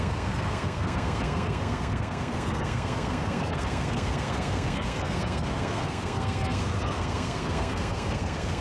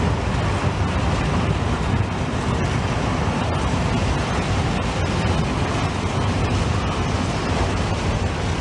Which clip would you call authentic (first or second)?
second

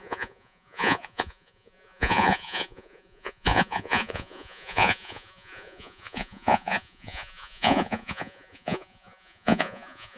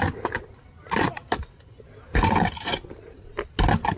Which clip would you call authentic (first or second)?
second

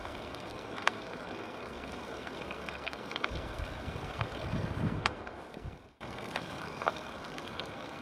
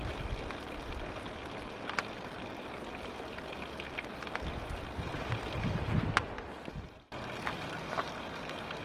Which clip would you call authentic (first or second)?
second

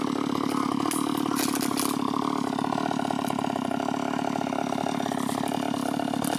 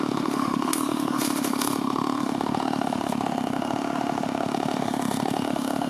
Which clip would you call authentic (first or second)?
first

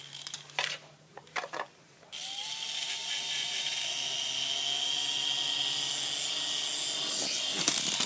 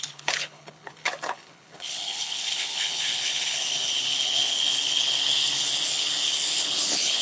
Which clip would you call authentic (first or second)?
first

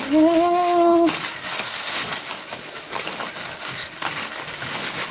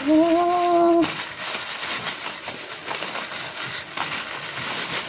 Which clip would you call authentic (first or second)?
second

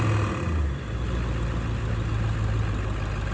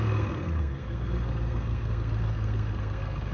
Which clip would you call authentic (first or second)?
first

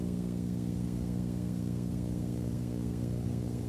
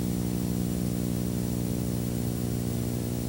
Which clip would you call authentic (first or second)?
second